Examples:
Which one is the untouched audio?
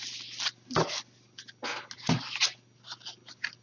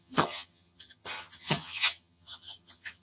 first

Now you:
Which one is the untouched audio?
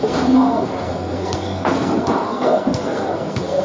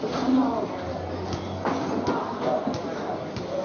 second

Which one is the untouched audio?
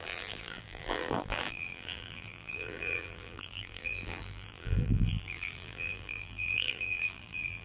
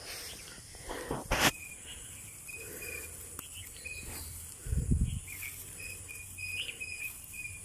second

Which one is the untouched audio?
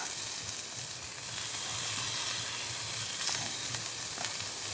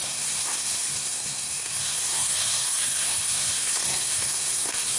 first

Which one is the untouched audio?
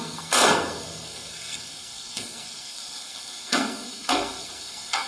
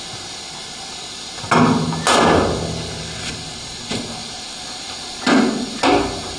second